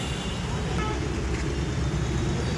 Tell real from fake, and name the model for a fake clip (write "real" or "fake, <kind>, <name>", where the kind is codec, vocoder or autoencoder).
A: real